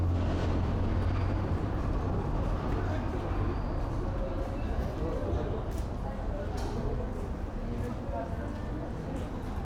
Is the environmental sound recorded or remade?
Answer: recorded